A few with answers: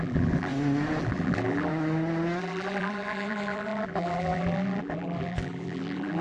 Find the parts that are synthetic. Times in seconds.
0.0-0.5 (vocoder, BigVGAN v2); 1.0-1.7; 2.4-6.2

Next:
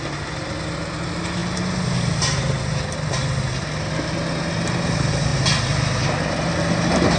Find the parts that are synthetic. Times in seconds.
none